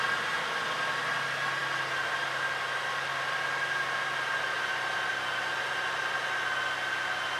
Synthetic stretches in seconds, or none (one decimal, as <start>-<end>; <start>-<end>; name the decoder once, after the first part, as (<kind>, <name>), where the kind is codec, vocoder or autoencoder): none